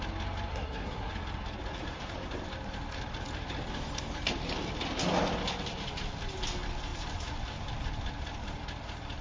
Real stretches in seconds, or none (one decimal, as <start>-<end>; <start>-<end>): 0.0-0.5; 1.1-9.2